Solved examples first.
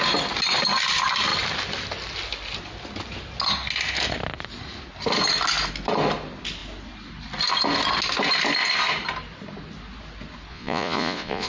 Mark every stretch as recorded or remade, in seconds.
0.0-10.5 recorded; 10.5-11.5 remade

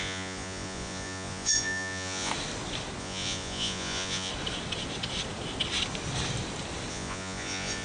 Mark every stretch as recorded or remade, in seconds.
0.0-2.3 remade; 2.3-3.0 recorded; 3.0-4.3 remade; 4.3-6.9 recorded; 6.9-7.8 remade

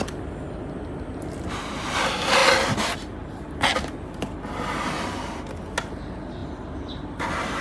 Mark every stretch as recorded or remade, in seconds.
0.0-7.6 recorded

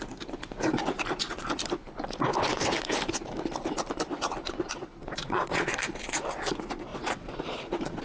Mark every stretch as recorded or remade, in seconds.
0.0-5.0 recorded; 5.0-5.7 remade; 5.7-6.9 recorded; 6.9-8.0 remade